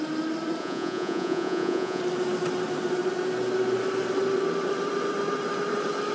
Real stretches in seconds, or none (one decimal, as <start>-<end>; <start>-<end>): 0.0-0.6; 2.0-6.1